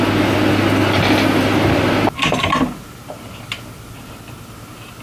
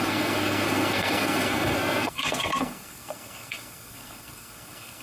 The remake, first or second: second